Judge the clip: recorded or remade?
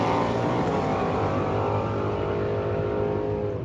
recorded